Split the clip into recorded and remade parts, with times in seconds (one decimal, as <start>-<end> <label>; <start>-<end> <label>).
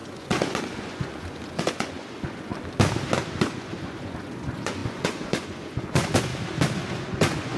0.0-2.5 remade; 2.5-3.3 recorded; 3.3-6.3 remade; 6.3-7.0 recorded; 7.0-7.6 remade